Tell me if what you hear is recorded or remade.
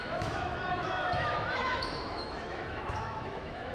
remade